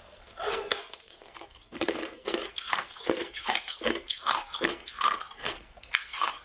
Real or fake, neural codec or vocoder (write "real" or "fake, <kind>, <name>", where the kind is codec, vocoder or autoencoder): fake, codec, SNAC